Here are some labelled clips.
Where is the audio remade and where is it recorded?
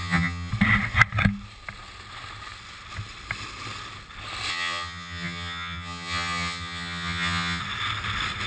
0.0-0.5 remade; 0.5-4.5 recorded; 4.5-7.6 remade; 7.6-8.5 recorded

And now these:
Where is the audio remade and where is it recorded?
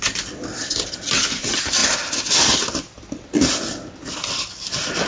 0.0-5.1 recorded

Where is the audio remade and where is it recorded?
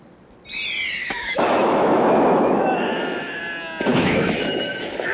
0.0-1.0 recorded; 1.0-3.4 remade; 3.4-3.9 recorded; 3.9-5.1 remade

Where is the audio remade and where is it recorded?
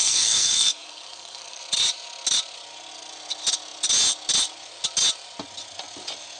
0.0-1.6 remade; 1.6-6.4 recorded